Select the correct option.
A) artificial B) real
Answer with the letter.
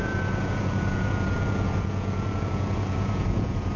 A